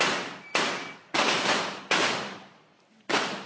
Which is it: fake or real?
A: real